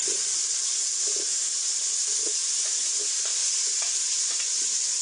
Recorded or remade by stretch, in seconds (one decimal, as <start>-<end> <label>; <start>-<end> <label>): 0.0-2.4 recorded; 2.4-3.0 remade; 3.0-5.0 recorded